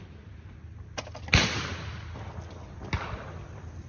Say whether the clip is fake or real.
real